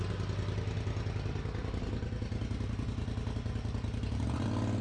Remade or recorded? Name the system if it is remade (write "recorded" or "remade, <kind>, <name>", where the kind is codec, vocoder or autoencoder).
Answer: recorded